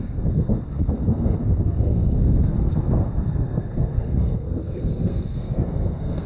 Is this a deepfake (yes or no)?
yes